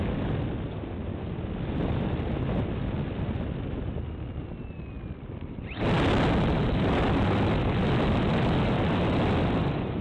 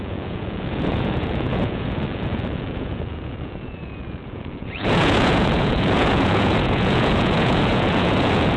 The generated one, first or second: second